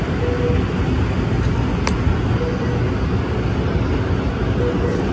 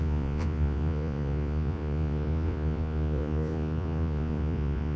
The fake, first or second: second